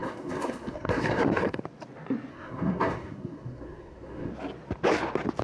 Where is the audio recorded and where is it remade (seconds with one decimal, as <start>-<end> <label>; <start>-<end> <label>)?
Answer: 0.0-1.6 remade; 1.6-2.3 recorded; 2.3-4.3 remade; 4.3-5.4 recorded